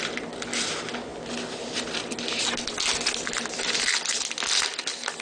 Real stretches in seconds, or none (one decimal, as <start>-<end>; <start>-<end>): 0.0-5.2